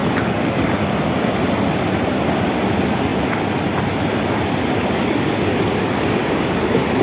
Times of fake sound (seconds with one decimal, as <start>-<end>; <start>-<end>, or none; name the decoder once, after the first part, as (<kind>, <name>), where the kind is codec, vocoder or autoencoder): 0.0-0.7 (codec, DAC); 4.7-7.0